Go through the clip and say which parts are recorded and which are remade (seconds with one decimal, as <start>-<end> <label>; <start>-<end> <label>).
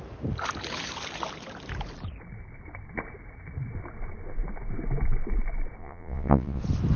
0.0-5.8 recorded; 5.8-6.6 remade; 6.6-7.0 recorded